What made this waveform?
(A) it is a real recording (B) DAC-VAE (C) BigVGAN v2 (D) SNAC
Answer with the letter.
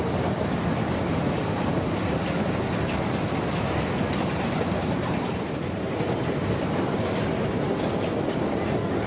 C